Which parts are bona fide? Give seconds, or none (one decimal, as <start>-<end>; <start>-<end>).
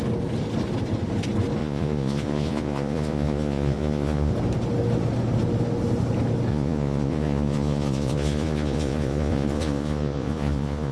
0.0-1.6; 4.3-6.5